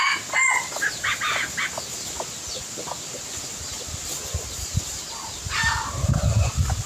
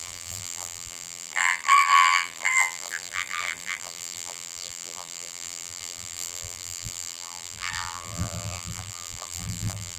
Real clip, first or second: first